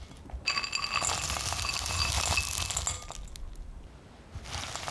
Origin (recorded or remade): recorded